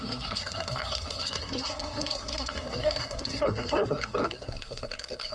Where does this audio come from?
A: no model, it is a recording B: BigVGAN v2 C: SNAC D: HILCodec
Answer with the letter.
C